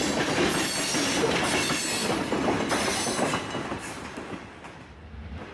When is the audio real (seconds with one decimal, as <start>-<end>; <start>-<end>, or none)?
0.0-3.7; 4.5-5.5